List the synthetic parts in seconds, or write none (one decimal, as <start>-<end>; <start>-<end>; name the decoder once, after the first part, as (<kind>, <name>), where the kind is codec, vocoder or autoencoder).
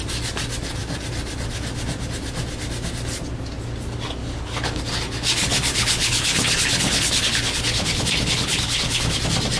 4.2-4.8 (codec, HILCodec); 5.4-9.2